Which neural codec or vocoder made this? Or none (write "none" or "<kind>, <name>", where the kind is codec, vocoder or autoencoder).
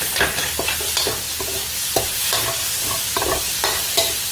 none